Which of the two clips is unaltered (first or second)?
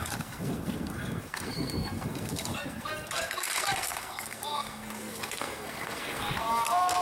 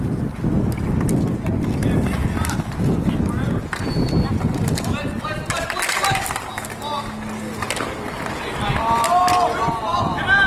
second